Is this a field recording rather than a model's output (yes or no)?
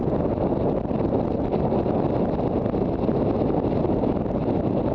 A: yes